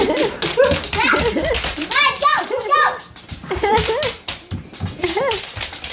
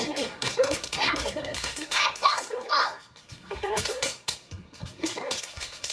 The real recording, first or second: first